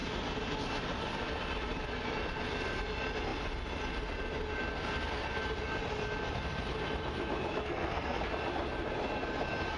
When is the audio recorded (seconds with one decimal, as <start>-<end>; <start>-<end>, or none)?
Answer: 0.0-7.6; 8.2-9.8